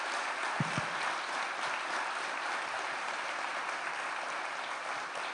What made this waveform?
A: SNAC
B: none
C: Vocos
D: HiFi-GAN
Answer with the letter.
B